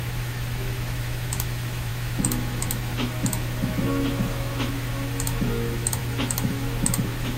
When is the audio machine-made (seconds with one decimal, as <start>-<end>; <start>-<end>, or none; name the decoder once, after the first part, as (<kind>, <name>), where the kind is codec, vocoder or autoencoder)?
0.0-7.4 (autoencoder, DAC-VAE)